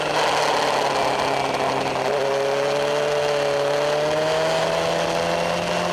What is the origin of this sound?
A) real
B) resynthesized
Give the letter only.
A